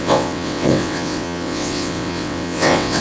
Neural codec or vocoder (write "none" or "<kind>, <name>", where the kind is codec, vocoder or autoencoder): vocoder, WaveNeXt